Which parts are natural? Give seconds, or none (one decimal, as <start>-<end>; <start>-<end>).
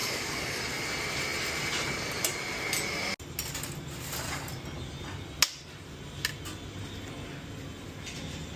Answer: 0.6-8.6